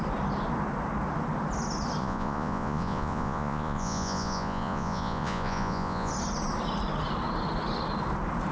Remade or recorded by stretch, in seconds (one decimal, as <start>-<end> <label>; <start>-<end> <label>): 0.0-2.0 recorded; 2.0-6.1 remade; 6.1-8.5 recorded